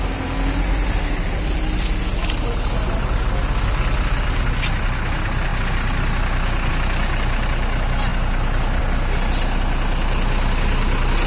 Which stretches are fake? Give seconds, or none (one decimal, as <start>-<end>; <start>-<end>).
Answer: none